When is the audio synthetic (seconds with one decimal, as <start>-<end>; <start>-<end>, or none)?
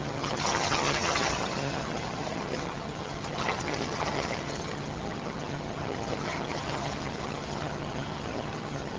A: 0.0-9.0